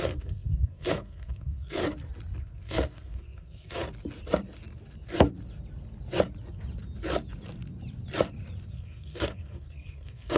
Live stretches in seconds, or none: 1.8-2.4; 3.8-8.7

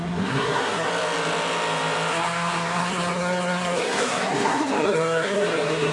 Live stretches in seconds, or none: 0.9-2.1

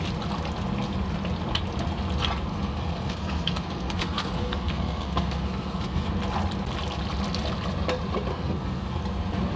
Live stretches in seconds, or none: 0.0-2.5; 6.1-8.3; 9.0-9.6